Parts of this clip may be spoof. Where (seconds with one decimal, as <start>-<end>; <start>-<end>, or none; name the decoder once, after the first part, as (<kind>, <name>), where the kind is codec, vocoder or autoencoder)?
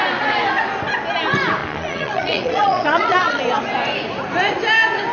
1.6-3.4 (vocoder, Vocos)